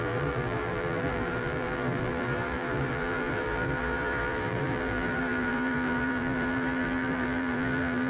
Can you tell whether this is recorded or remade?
remade